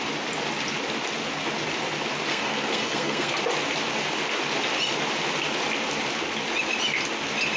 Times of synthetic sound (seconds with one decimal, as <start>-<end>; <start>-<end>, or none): 2.3-3.4